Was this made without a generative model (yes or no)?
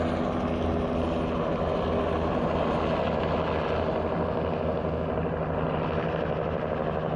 yes